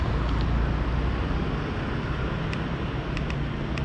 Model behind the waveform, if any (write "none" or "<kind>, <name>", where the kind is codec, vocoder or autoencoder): none